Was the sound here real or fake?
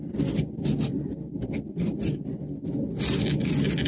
real